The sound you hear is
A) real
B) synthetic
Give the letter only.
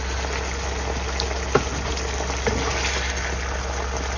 A